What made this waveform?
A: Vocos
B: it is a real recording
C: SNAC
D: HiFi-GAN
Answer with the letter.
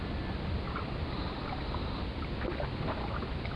B